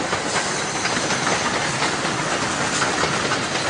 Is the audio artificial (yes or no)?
no